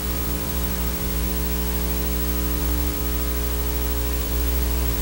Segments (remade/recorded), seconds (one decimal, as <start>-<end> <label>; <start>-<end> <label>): 0.0-1.3 remade; 1.3-2.6 recorded; 2.6-3.0 remade; 3.0-4.2 recorded; 4.2-5.0 remade